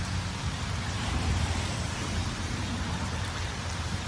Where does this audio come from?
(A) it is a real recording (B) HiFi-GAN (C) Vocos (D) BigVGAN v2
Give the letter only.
D